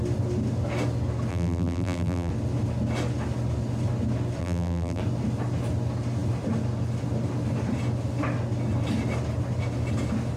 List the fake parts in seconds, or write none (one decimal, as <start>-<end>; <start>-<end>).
1.3-2.3; 4.4-5.0